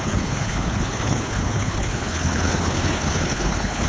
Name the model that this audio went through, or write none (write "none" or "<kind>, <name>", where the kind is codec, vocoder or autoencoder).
codec, HILCodec